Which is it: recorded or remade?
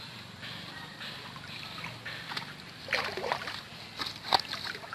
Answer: recorded